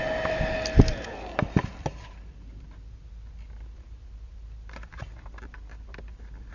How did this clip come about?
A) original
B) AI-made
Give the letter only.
A